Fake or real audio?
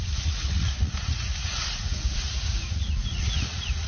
fake